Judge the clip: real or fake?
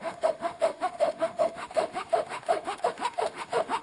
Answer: fake